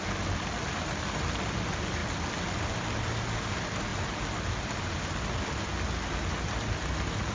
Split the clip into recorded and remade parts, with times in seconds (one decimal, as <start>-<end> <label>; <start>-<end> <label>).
0.0-7.3 recorded